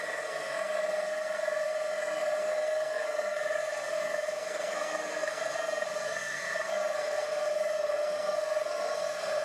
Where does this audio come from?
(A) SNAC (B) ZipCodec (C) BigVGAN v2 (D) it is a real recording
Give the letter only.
A